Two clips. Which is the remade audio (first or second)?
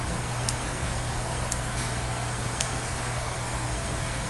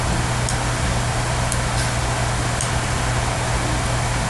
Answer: first